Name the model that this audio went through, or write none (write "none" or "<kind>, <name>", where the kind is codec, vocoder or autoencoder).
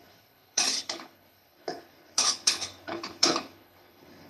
codec, HILCodec